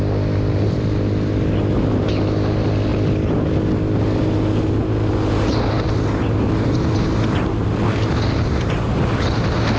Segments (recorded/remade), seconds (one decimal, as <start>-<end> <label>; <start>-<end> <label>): 0.0-9.8 recorded